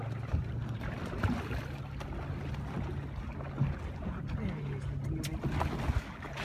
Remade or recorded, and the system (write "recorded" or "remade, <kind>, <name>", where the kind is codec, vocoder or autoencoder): recorded